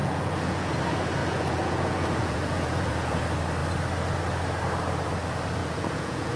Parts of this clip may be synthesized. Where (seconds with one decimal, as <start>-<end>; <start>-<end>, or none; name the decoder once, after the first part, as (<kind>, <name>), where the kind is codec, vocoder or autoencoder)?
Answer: 0.0-0.7 (vocoder, Vocos); 1.2-3.2; 5.6-6.4